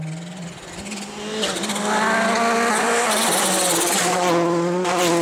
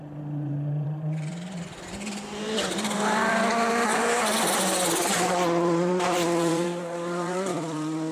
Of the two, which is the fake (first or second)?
second